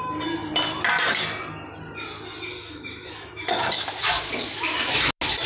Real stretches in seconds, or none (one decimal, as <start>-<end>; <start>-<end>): 0.0-2.5; 3.6-5.5